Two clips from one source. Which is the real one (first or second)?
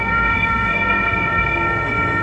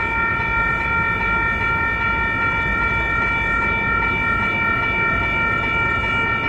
second